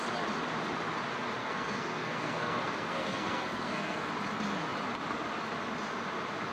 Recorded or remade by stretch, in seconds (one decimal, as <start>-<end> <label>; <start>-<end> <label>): 0.0-1.4 recorded; 1.4-4.1 remade; 4.1-6.5 recorded